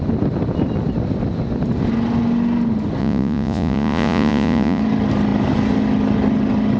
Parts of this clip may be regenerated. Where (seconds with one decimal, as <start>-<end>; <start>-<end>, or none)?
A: 3.0-4.8